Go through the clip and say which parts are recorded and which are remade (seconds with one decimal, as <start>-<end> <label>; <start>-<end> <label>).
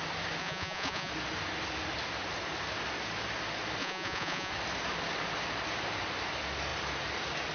0.0-0.4 recorded; 0.4-1.1 remade; 1.1-3.8 recorded; 3.8-4.5 remade; 4.5-7.5 recorded